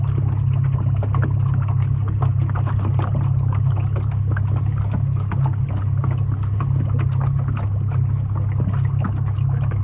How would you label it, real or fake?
real